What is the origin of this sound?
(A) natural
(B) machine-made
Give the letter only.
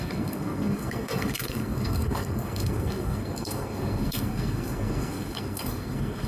B